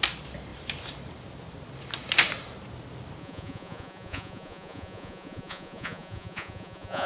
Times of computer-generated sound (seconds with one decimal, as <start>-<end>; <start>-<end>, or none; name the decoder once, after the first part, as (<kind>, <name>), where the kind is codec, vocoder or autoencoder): 3.2-7.1 (vocoder, Vocos)